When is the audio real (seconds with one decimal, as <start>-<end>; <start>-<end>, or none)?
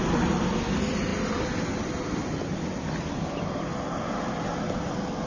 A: 0.0-5.3